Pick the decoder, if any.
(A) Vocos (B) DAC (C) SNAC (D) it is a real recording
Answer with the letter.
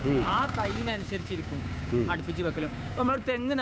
B